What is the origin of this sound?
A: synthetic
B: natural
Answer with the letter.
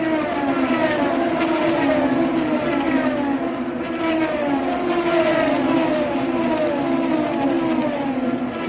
A